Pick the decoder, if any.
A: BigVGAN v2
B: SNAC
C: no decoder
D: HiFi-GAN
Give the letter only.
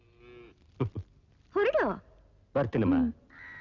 C